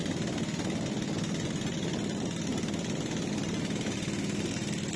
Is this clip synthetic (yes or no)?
no